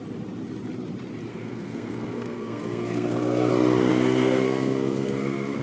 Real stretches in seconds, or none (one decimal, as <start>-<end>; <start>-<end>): 0.0-1.3; 3.5-3.9